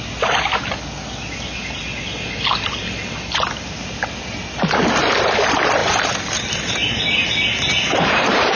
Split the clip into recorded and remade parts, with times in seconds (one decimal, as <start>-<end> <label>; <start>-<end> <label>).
0.0-5.8 recorded; 5.8-8.6 remade